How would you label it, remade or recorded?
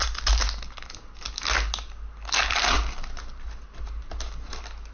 recorded